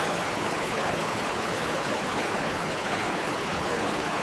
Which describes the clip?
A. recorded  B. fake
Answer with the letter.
B